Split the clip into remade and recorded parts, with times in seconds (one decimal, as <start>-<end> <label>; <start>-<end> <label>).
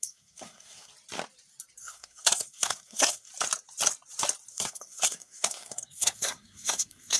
0.0-0.9 remade; 0.9-1.8 recorded; 1.8-3.3 remade; 3.3-4.5 recorded; 4.5-7.2 remade